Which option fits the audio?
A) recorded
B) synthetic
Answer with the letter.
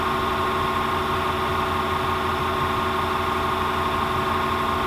A